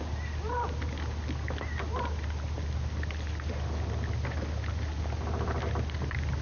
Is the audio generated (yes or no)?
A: no